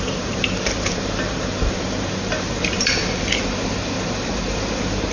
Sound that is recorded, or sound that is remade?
remade